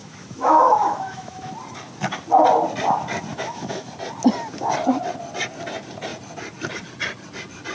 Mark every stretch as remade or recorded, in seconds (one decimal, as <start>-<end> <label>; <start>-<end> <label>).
0.0-1.5 remade; 1.5-3.3 recorded; 3.3-3.9 remade; 3.9-7.7 recorded